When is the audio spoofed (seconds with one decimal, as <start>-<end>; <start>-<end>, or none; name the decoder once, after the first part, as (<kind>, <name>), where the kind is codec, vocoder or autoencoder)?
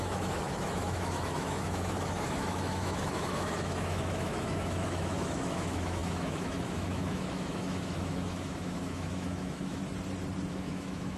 0.0-9.8 (autoencoder, DAC-VAE); 10.5-11.2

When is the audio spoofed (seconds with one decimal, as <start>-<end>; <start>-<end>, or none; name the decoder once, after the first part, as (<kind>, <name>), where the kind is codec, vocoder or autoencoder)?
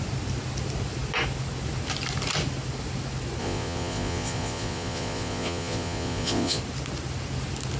3.4-6.6 (vocoder, Vocos)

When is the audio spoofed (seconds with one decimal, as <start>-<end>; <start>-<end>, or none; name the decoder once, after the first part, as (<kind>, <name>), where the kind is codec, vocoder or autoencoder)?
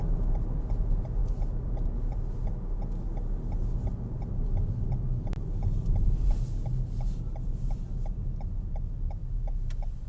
none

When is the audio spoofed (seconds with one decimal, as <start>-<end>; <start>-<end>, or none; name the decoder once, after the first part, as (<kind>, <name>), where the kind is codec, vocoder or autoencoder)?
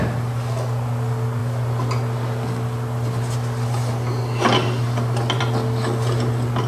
none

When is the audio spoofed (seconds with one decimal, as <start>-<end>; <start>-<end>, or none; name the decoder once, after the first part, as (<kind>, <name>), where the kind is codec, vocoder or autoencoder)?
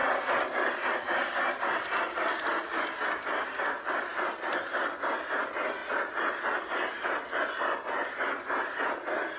0.0-2.8 (vocoder, BigVGAN v2); 4.1-4.7